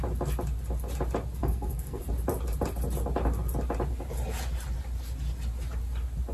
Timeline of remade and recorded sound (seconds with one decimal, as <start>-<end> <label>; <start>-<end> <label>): 0.0-1.4 recorded; 1.4-2.0 remade; 2.0-6.3 recorded